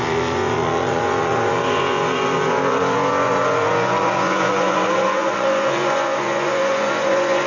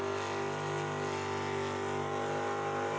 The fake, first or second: first